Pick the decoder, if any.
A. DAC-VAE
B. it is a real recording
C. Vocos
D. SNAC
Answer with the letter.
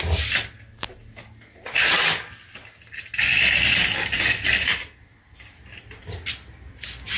B